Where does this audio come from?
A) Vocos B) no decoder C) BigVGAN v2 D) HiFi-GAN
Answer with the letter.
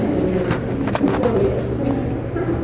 B